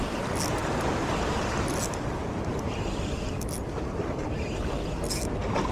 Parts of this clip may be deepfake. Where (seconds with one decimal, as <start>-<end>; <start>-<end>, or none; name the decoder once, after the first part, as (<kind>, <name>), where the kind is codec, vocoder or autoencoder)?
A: none